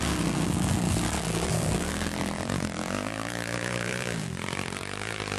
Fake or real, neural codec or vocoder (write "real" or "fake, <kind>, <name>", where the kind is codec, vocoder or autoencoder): fake, vocoder, BigVGAN v2